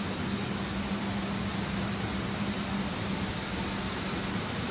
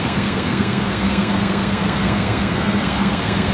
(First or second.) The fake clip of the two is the second